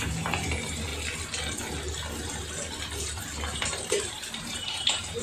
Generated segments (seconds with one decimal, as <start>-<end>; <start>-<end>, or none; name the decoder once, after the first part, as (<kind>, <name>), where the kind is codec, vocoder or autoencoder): 0.0-0.9 (vocoder, BigVGAN v2); 3.2-5.2